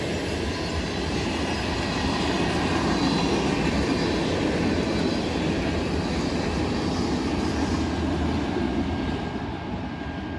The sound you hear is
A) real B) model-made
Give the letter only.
A